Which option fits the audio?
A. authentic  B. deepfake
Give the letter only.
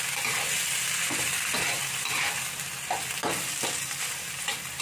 A